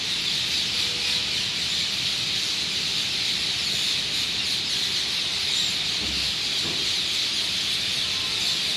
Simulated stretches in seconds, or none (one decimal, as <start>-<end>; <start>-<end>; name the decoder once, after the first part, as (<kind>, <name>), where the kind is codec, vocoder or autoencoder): none